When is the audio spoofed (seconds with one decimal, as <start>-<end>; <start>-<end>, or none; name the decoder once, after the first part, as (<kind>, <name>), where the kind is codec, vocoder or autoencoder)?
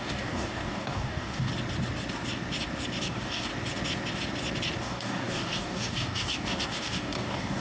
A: 0.0-1.5 (codec, DAC); 3.0-3.5; 4.8-7.6